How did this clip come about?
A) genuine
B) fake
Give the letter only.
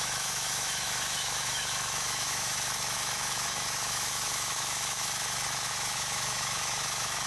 B